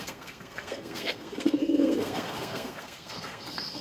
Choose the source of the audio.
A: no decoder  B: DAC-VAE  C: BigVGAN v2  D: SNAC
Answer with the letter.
D